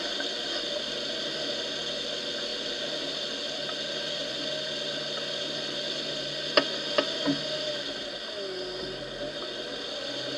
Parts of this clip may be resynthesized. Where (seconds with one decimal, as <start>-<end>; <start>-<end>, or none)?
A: none